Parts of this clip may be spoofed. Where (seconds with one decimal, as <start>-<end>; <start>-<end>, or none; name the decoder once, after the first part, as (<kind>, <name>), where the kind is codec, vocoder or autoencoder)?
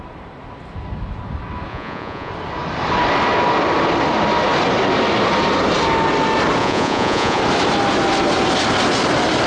1.7-2.3 (vocoder, Vocos); 6.6-7.4